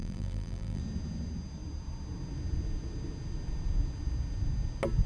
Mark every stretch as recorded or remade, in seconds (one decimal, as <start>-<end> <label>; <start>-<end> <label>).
0.0-0.8 remade; 0.8-5.1 recorded